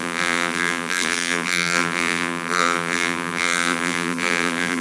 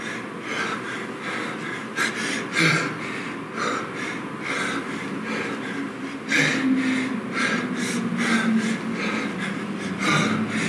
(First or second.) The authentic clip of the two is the second